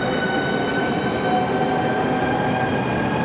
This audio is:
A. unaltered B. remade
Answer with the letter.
A